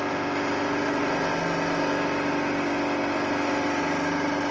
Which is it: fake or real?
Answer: real